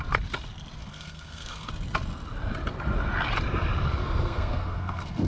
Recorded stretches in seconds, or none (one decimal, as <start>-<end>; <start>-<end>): 0.0-0.8; 1.7-4.0